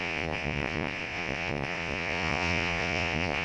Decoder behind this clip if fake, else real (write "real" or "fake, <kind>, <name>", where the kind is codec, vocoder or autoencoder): fake, vocoder, Vocos